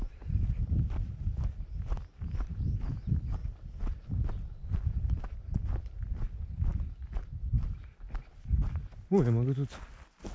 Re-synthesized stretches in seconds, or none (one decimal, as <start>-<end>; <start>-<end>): none

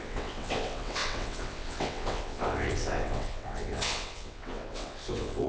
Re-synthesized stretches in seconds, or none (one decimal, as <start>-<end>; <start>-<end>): 0.0-5.5

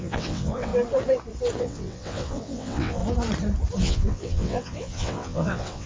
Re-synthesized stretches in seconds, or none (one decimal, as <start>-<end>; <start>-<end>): 0.0-0.7; 1.6-3.0; 3.8-5.9